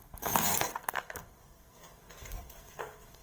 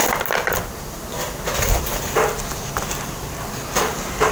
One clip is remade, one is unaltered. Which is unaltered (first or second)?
second